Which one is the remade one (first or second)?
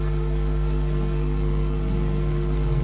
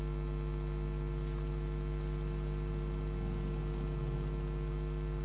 first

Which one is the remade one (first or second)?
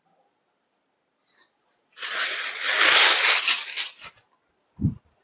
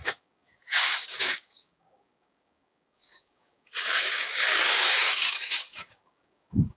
second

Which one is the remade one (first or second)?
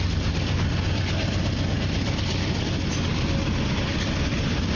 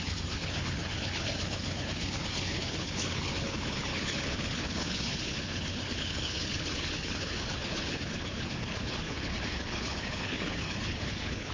second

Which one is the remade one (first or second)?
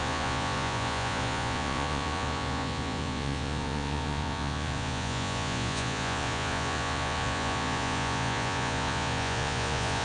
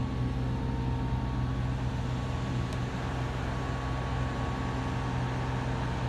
first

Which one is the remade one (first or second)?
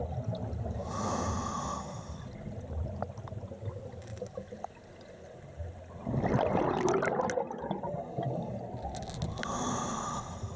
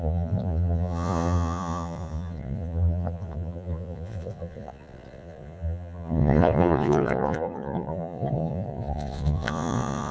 second